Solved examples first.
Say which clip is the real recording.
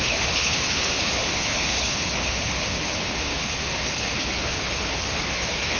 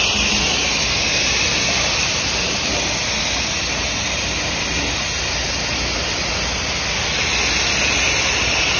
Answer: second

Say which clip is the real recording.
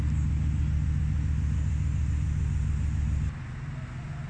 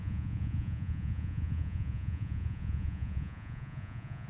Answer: first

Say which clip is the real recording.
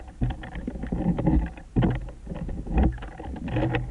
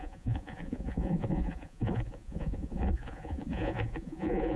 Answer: first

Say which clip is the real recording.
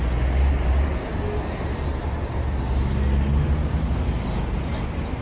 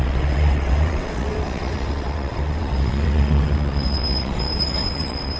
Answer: first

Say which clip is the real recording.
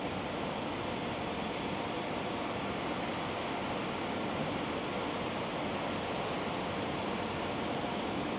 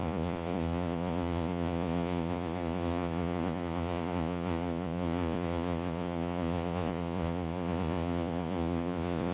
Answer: first